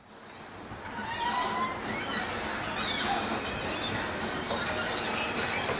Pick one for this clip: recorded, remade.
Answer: recorded